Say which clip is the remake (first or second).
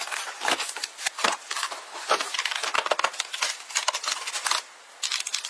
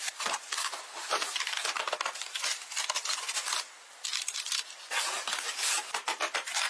second